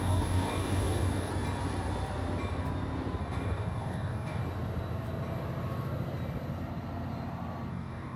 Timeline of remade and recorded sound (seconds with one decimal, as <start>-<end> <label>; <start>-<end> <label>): 0.0-1.3 remade; 1.3-3.2 recorded; 3.2-4.4 remade; 4.4-7.7 recorded; 7.7-8.2 remade